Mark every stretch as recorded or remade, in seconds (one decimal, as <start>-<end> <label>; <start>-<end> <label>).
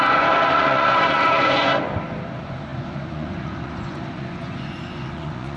0.0-1.7 remade; 1.7-2.3 recorded; 2.3-5.6 remade